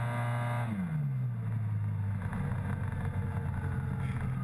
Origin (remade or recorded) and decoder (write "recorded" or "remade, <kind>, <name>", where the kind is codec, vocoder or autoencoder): recorded